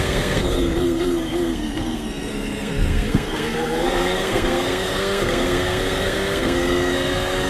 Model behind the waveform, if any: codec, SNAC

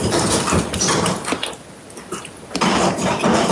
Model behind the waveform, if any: none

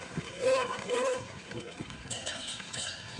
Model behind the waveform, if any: codec, SNAC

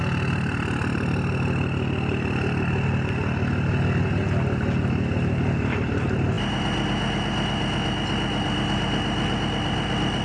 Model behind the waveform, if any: none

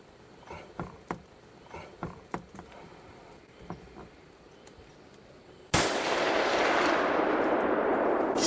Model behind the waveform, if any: vocoder, BigVGAN v2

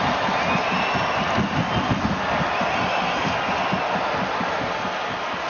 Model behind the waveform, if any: none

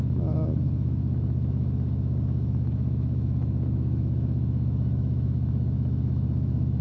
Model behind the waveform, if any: autoencoder, DAC-VAE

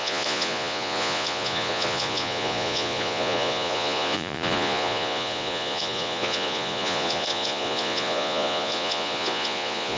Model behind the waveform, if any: vocoder, Vocos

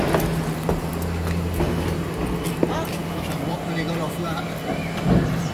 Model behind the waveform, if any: none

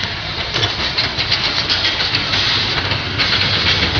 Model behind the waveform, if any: none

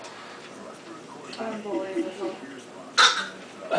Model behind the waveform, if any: none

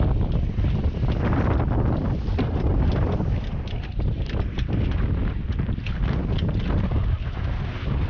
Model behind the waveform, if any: none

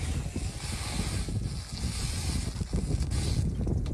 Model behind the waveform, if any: none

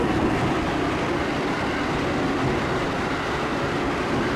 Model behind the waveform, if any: vocoder, BigVGAN v2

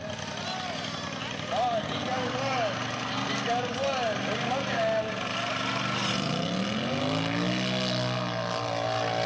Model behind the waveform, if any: none